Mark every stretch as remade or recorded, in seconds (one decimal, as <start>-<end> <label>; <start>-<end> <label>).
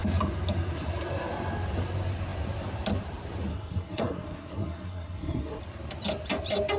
0.0-3.5 recorded; 3.5-5.6 remade; 5.6-6.8 recorded